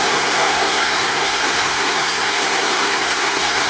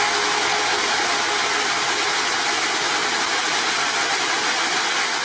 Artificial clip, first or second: first